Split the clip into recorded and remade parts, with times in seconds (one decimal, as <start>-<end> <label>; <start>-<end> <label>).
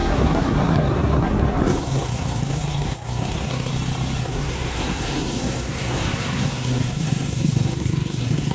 0.0-3.7 remade; 3.7-4.2 recorded; 4.2-8.5 remade